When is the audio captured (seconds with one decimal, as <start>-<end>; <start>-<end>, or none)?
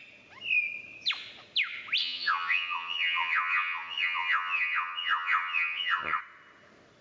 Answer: 0.0-2.0; 6.2-7.0